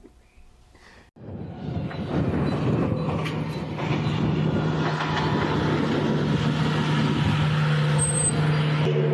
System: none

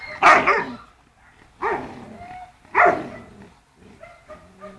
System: none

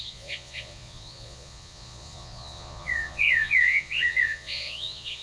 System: vocoder, Vocos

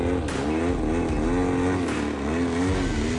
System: none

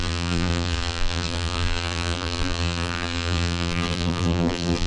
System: vocoder, BigVGAN v2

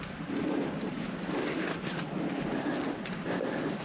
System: none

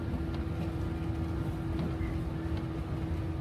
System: none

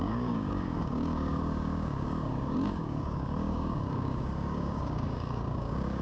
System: codec, DAC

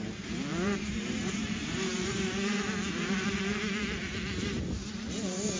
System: vocoder, BigVGAN v2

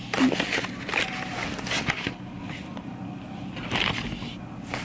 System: none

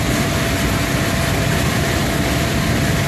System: none